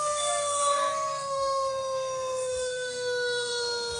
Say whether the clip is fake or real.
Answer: fake